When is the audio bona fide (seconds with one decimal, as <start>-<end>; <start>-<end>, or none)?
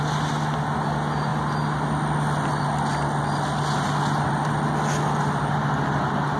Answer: 0.0-6.4